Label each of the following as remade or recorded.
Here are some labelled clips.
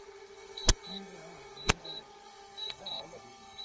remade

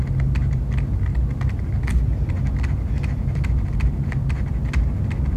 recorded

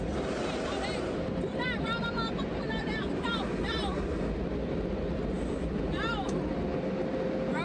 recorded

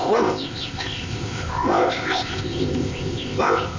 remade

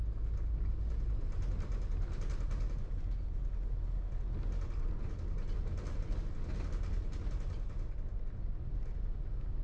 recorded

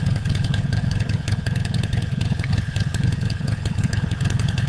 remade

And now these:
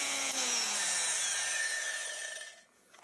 remade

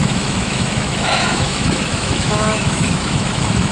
remade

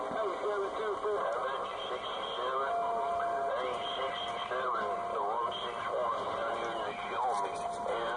recorded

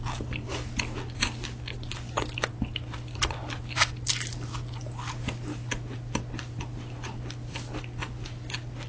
recorded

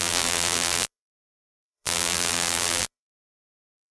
remade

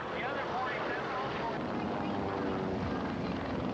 recorded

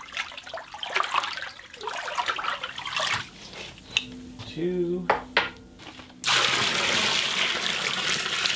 recorded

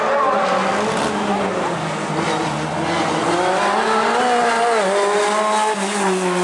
recorded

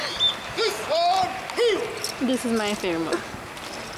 recorded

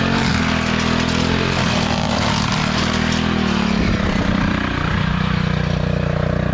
recorded